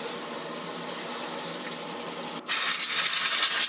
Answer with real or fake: fake